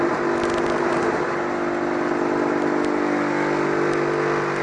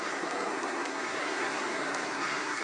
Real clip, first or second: first